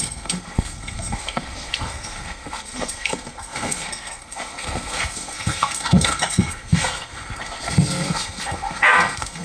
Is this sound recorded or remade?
remade